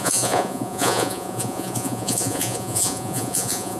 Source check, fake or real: fake